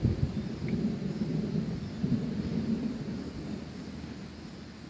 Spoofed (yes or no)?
no